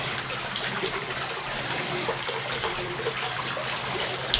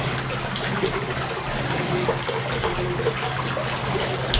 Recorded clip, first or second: second